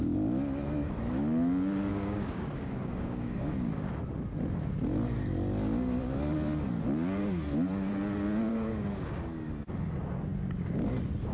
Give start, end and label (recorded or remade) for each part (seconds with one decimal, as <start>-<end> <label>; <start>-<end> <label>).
0.0-1.9 recorded; 1.9-3.9 remade; 3.9-8.5 recorded; 8.5-9.2 remade; 9.2-11.3 recorded